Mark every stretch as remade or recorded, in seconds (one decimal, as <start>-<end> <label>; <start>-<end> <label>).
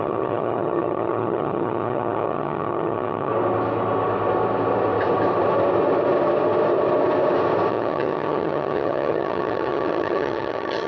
0.0-3.3 remade; 3.3-7.7 recorded; 7.7-10.9 remade